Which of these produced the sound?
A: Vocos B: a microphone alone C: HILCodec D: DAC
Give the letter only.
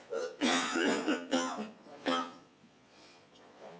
A